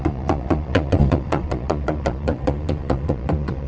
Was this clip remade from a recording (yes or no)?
yes